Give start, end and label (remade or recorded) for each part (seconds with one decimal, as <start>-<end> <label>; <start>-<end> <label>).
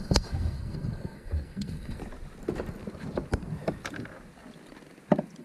0.0-2.0 remade; 2.0-5.4 recorded